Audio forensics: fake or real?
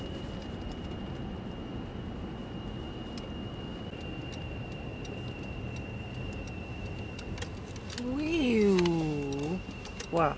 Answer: real